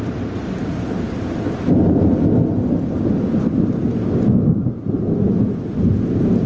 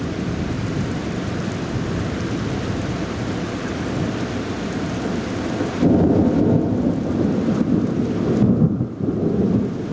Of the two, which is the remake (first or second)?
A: second